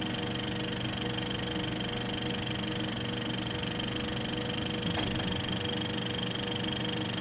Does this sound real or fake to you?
real